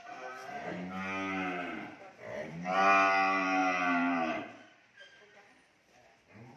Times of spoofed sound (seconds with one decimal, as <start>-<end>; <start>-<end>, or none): 0.0-0.4; 2.0-6.6